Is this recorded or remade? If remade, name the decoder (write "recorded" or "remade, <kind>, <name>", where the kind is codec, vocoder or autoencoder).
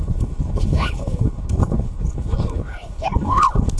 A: remade, codec, HILCodec